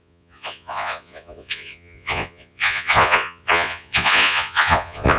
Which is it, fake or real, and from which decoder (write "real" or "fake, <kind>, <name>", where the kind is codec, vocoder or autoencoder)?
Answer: fake, vocoder, Vocos